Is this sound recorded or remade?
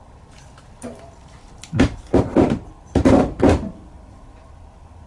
remade